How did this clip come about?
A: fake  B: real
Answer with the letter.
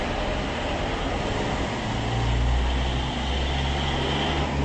B